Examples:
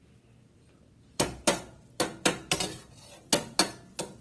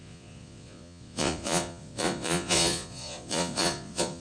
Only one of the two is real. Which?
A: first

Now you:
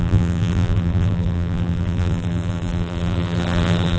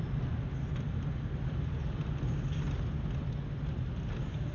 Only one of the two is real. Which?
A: second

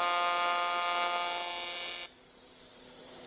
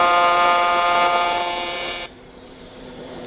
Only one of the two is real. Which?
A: first